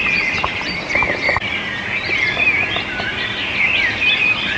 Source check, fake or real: real